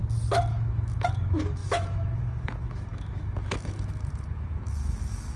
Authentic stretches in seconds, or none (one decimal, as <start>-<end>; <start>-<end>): 0.0-0.5